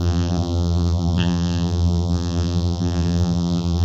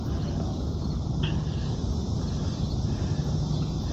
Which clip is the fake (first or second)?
first